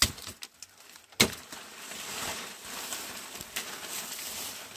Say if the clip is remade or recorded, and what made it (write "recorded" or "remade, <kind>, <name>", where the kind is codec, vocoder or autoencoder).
recorded